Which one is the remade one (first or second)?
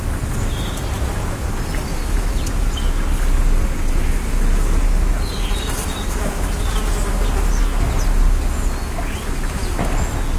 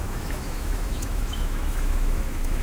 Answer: second